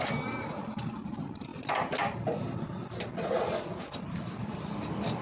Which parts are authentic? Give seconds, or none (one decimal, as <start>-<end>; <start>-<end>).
0.0-5.2

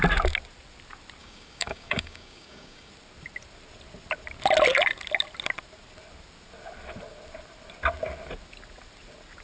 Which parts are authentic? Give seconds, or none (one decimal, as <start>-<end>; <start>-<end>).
0.0-1.2; 2.9-9.4

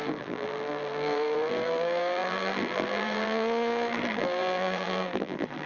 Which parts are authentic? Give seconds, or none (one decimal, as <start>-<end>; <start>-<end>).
none

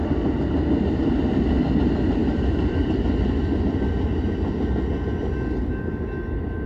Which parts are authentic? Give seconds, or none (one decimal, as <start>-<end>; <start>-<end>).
0.0-2.2; 3.3-6.7

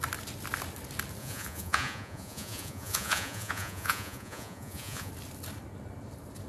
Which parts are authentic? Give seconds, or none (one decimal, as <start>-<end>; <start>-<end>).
0.0-1.2; 5.1-6.5

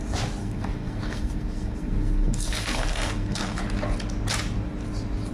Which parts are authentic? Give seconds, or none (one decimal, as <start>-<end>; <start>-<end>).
0.0-0.4; 3.6-5.3

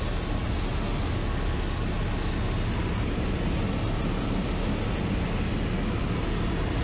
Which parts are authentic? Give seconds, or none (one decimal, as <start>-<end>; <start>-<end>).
0.0-6.8